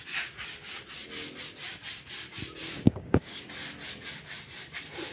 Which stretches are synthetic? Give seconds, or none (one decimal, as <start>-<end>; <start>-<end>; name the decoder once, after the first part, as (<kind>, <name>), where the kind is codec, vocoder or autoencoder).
2.6-3.4 (codec, DAC)

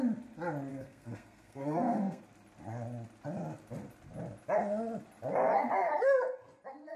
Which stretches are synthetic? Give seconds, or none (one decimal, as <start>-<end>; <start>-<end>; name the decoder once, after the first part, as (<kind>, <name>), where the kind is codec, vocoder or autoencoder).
0.7-2.2 (codec, SNAC)

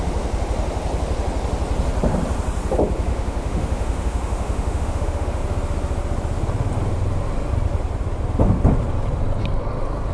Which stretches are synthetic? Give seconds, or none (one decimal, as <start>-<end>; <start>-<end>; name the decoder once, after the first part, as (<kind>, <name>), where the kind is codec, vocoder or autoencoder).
3.1-5.4 (autoencoder, DAC-VAE)

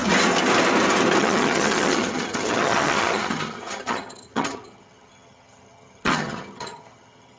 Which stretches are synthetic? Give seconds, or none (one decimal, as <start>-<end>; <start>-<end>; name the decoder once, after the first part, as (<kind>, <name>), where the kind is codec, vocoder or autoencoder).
1.2-7.4 (vocoder, HiFi-GAN)

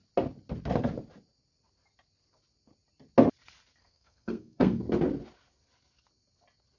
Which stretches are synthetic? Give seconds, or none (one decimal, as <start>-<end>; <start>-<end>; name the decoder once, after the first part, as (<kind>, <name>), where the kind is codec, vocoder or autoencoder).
3.8-4.8 (codec, SNAC)

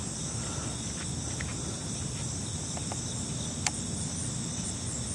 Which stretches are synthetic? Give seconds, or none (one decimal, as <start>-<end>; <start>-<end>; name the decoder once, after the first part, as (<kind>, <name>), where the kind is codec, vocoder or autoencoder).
none